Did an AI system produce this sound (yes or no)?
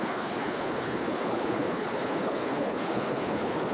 yes